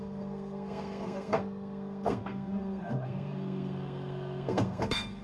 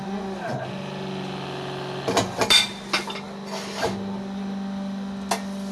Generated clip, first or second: first